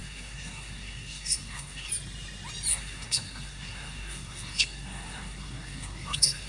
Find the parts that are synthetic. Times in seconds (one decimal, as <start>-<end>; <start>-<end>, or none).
0.0-1.9; 2.7-6.5